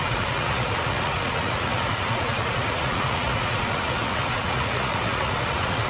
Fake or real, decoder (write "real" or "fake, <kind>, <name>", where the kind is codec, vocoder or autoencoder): fake, vocoder, Vocos